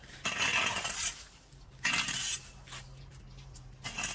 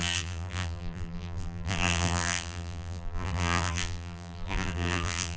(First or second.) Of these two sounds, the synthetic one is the second